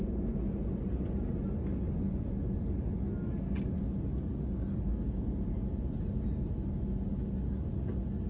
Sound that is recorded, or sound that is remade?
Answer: recorded